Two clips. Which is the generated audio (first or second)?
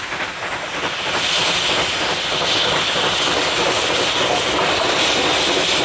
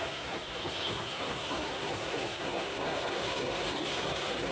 second